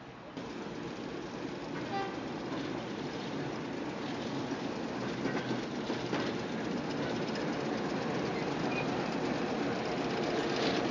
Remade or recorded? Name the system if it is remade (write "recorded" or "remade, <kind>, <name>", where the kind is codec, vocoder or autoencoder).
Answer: recorded